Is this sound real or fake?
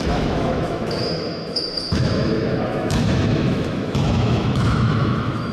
fake